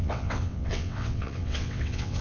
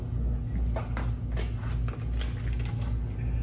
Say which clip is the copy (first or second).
first